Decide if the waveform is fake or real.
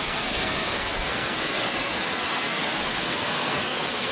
fake